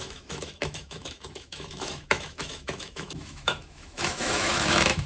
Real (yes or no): no